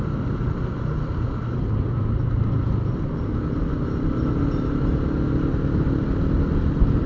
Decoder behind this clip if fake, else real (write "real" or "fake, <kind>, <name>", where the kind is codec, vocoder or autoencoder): real